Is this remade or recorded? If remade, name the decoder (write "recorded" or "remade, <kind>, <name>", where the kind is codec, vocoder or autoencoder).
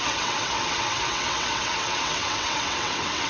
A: remade, vocoder, WaveNeXt